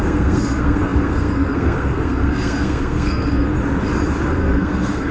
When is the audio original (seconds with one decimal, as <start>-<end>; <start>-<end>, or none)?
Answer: 3.5-4.3